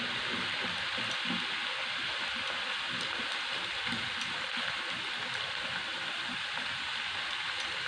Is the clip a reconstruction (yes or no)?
no